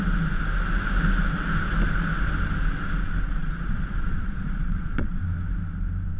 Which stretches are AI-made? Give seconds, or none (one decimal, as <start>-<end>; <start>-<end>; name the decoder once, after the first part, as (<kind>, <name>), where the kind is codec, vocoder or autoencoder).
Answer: 3.4-5.2 (vocoder, Vocos)